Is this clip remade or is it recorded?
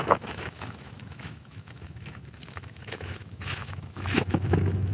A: remade